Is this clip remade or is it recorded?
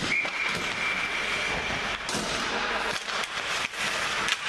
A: recorded